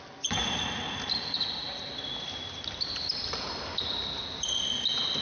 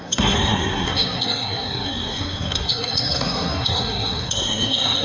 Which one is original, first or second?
first